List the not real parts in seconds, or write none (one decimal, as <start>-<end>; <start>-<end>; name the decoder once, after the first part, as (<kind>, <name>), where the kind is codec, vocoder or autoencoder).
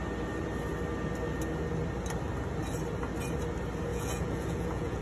3.9-5.0 (vocoder, Vocos)